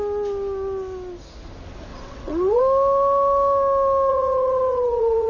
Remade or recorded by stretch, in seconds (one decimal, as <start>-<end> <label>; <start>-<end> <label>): 0.0-1.9 recorded; 1.9-2.6 remade; 2.6-4.1 recorded; 4.1-5.3 remade